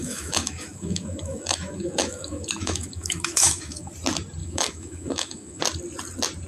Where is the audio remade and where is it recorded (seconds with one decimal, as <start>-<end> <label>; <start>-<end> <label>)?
0.0-3.9 remade; 3.9-4.4 recorded; 4.4-5.6 remade; 5.6-6.5 recorded